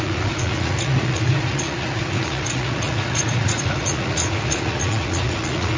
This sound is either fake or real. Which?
fake